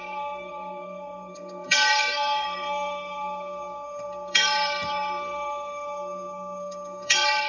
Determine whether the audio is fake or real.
fake